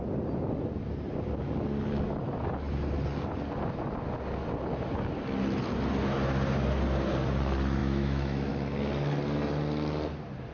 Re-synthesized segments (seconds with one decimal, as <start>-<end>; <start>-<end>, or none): 7.8-8.5